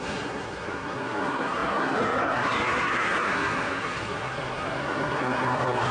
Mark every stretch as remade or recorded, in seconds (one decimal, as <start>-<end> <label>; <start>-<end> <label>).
0.0-5.9 remade